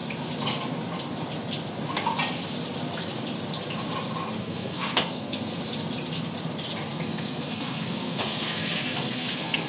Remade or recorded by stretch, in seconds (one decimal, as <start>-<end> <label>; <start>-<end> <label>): 0.0-4.4 recorded; 4.4-5.6 remade; 5.6-6.9 recorded; 6.9-9.7 remade